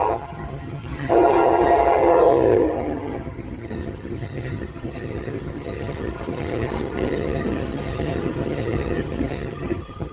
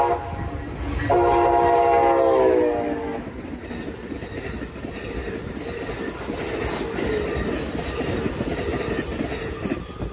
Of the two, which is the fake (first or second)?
first